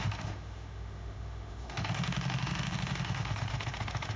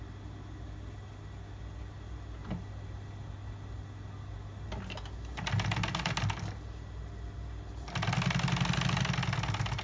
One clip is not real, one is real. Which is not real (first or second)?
first